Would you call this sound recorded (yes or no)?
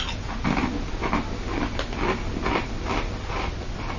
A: yes